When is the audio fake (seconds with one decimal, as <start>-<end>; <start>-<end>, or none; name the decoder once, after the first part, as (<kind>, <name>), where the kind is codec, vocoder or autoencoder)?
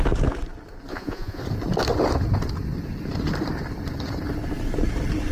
0.9-1.4 (vocoder, Vocos)